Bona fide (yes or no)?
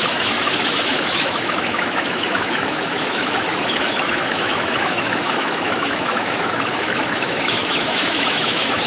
no